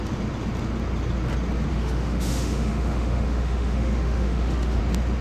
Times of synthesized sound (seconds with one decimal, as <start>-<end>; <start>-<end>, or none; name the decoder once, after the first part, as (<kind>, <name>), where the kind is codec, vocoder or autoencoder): 1.7-4.8 (autoencoder, DAC-VAE)